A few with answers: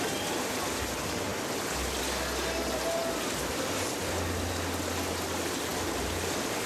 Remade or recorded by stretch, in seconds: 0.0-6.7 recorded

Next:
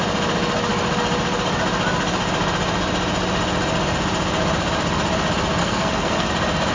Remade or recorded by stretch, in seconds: 0.0-5.6 recorded; 5.6-6.3 remade; 6.3-6.7 recorded

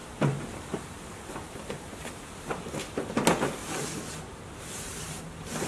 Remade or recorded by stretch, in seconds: 0.0-3.1 remade; 3.1-3.6 recorded; 3.6-5.2 remade; 5.2-5.7 recorded